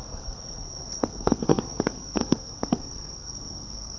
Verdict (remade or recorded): remade